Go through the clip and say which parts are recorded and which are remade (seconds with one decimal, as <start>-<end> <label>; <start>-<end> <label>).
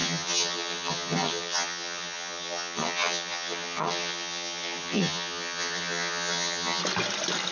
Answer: 0.0-6.8 remade; 6.8-7.5 recorded